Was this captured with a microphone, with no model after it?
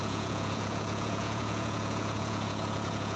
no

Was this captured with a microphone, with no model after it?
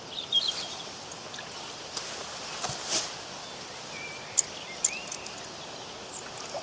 yes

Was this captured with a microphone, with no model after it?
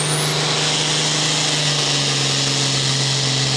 yes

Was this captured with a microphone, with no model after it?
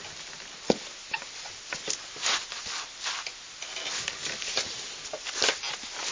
yes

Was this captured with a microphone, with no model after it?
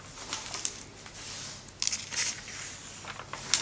yes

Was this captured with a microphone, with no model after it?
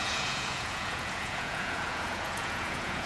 no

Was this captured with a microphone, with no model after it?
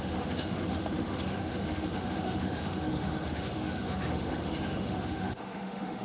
no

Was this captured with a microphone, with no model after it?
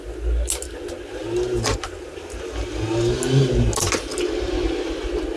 yes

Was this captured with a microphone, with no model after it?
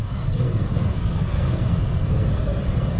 no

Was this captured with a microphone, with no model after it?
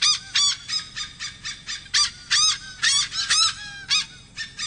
yes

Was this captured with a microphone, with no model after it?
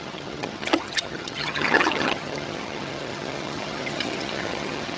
no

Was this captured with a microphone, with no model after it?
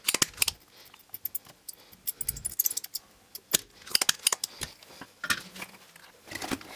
yes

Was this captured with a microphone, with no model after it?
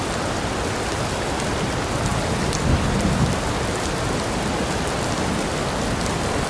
yes